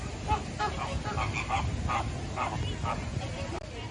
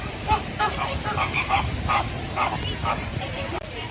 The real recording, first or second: first